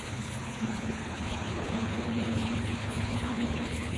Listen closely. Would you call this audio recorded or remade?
remade